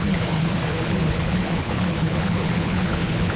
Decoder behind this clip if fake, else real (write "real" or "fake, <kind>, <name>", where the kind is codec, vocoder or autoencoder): fake, codec, HILCodec